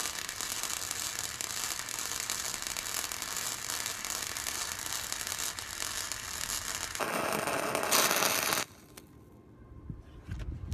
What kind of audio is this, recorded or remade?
recorded